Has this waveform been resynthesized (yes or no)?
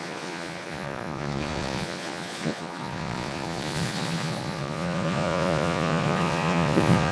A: yes